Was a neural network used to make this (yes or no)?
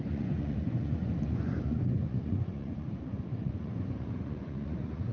yes